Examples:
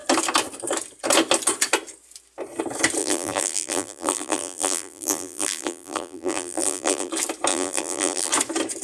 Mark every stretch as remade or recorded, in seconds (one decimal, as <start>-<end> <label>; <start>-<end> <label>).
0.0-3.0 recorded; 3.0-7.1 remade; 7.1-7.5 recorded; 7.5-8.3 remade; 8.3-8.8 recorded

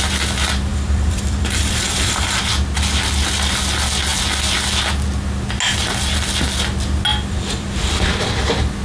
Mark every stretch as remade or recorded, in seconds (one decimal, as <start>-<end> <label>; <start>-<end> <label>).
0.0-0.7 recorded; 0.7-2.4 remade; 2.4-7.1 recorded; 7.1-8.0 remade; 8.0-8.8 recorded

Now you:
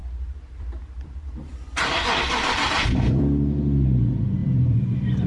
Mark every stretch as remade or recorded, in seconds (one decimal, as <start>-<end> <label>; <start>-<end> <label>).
0.0-3.2 remade; 3.2-4.4 recorded; 4.4-5.3 remade

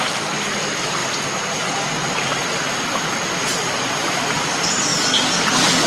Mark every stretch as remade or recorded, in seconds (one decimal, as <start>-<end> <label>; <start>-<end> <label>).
0.0-1.0 recorded; 1.0-4.5 remade; 4.5-5.9 recorded